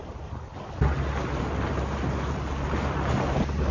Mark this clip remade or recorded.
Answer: recorded